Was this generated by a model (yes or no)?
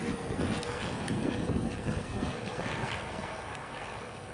yes